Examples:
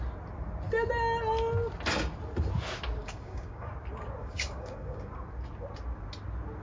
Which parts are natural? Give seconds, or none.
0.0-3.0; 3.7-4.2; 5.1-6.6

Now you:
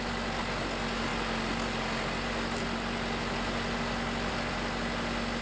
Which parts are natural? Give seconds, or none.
0.0-5.4

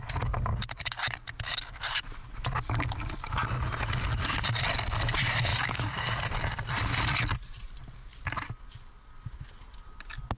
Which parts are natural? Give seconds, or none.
0.0-5.5; 6.2-10.4

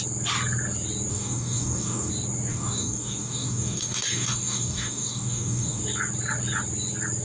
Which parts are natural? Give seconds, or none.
0.0-1.1; 2.1-2.5; 5.8-7.2

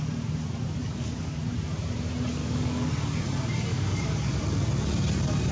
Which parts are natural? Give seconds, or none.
0.0-0.8; 1.4-2.4; 2.9-3.7; 4.4-5.5

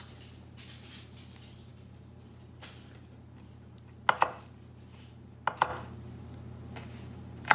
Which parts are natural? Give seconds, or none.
0.0-7.5

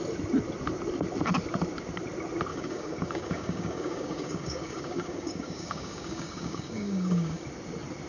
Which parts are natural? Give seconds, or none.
0.0-2.5; 7.4-8.1

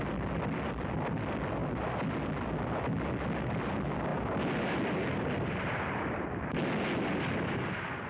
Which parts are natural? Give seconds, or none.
0.0-8.1